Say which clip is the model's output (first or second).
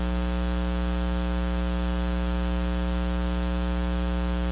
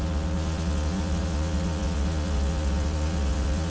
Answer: second